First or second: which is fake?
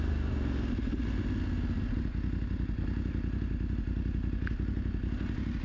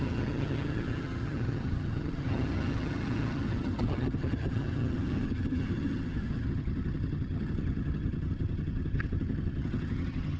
second